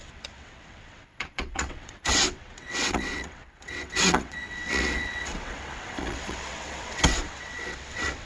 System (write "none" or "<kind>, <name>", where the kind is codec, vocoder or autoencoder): vocoder, WaveNeXt